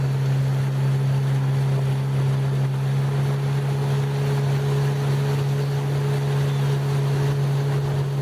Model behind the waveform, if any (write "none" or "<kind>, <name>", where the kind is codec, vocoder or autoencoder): none